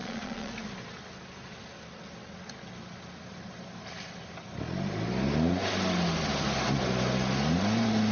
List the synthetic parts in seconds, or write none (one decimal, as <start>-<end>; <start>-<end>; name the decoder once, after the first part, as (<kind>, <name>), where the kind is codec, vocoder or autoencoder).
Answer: 0.0-0.5 (vocoder, Vocos)